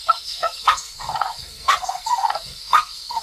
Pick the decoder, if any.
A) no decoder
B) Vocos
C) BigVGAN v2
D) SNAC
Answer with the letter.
D